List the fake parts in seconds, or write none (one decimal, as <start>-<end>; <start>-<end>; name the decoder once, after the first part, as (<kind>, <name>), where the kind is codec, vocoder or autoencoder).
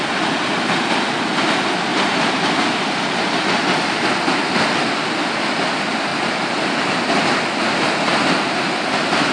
1.9-3.5 (vocoder, BigVGAN v2); 6.1-7.0; 8.1-9.3